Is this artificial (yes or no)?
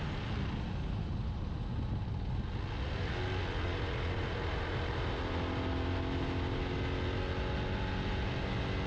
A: no